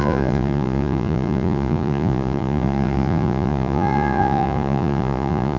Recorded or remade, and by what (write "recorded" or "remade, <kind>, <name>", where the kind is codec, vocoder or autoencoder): remade, vocoder, Vocos